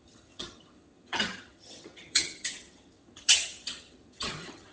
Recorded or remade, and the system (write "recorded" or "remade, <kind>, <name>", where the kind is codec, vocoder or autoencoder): remade, vocoder, HiFi-GAN